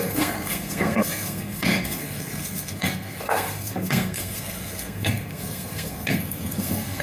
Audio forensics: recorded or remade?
remade